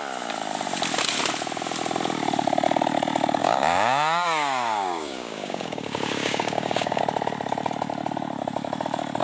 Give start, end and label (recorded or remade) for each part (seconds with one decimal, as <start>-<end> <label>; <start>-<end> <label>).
0.0-3.4 recorded; 3.4-7.0 remade; 7.0-9.2 recorded